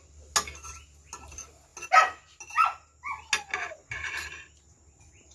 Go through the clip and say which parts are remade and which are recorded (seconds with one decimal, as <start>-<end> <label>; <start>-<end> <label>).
0.0-5.3 recorded